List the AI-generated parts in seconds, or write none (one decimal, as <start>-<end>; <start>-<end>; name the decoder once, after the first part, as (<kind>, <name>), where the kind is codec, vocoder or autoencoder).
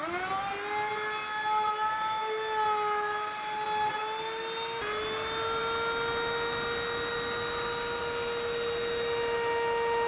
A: none